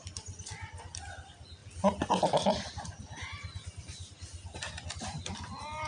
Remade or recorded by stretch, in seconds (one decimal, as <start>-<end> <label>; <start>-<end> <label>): 0.0-5.9 recorded